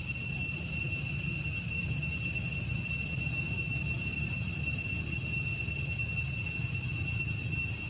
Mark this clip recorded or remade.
recorded